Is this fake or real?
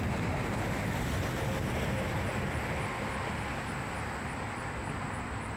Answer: real